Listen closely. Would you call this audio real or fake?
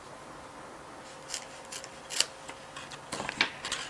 real